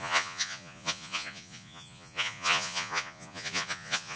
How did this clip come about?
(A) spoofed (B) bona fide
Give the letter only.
A